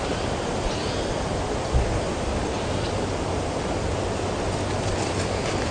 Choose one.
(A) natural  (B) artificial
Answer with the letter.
A